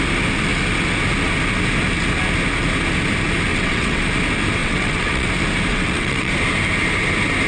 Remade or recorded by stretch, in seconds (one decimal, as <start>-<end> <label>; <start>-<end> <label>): 0.0-3.5 recorded; 3.5-4.1 remade; 4.1-4.6 recorded; 4.6-5.3 remade; 5.3-5.7 recorded; 5.7-6.3 remade; 6.3-7.5 recorded

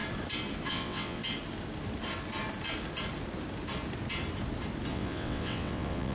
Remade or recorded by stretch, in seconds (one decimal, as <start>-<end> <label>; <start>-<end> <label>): 0.0-0.7 recorded; 0.7-1.2 remade; 1.2-4.9 recorded; 4.9-6.1 remade

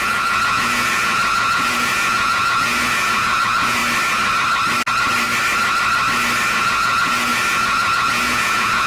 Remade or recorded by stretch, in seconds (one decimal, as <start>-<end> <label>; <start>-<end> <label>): 0.0-3.8 remade; 3.8-6.4 recorded; 6.4-8.9 remade

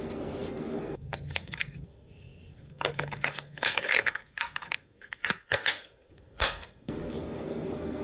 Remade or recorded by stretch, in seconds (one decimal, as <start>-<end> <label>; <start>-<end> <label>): 0.0-8.0 remade